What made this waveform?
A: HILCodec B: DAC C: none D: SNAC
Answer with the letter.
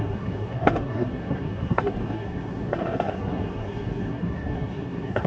D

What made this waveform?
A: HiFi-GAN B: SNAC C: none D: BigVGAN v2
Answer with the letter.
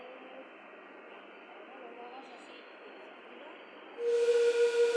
C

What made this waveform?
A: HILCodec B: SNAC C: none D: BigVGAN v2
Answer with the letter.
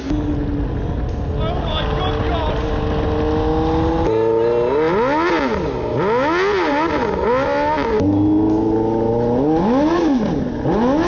C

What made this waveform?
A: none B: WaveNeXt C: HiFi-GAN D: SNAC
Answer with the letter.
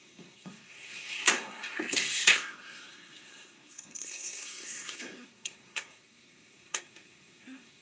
D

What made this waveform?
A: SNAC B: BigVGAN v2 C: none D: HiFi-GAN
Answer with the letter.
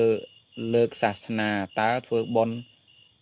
C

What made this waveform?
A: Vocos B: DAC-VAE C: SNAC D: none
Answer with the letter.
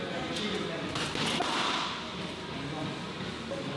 D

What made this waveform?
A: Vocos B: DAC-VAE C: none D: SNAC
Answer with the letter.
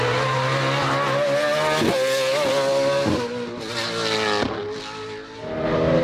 C